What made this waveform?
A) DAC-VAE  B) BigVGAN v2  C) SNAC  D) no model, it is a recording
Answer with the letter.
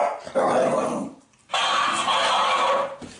D